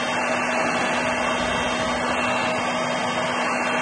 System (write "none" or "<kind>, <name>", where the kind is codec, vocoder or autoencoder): none